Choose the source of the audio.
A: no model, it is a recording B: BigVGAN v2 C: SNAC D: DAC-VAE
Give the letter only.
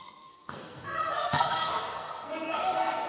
C